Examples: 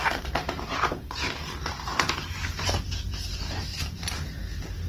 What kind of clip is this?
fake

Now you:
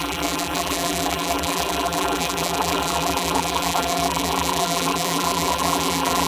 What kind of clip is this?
fake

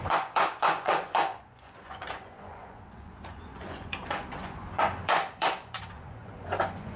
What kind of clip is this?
fake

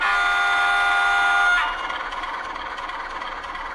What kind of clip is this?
real